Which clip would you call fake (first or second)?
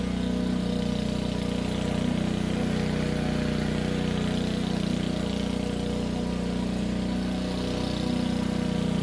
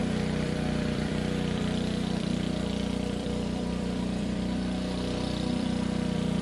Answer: second